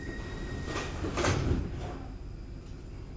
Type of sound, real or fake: real